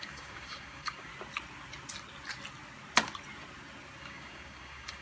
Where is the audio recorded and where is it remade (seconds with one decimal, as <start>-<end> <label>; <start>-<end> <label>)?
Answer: 0.0-1.1 remade; 1.1-4.0 recorded; 4.0-5.0 remade